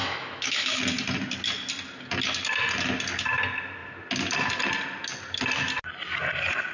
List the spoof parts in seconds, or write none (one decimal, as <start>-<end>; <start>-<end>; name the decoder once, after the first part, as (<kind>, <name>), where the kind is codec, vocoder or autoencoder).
0.0-0.8 (autoencoder, DAC-VAE)